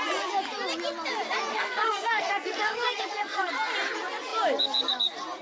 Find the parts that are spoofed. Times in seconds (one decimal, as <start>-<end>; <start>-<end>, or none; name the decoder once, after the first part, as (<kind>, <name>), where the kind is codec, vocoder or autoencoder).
1.5-3.5 (codec, SNAC)